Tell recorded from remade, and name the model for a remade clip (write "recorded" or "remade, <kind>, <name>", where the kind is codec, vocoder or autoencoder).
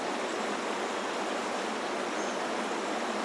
recorded